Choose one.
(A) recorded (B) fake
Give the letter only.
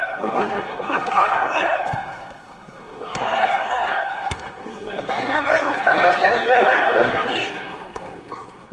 B